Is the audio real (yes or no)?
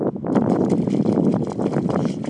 yes